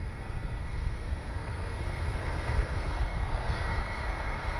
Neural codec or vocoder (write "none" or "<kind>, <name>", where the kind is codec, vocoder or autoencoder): codec, SNAC